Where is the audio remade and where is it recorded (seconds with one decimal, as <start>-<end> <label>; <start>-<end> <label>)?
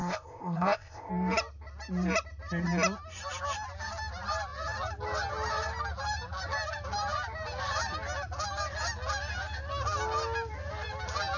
0.0-1.1 remade; 1.1-11.4 recorded